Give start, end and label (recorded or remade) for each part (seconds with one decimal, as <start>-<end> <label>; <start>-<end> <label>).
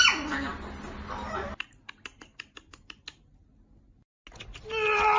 0.0-5.2 recorded